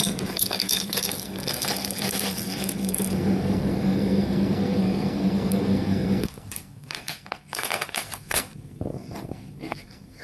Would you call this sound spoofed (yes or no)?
yes